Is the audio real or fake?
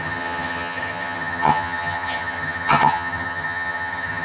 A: fake